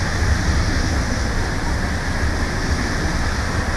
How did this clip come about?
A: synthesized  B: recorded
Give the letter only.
B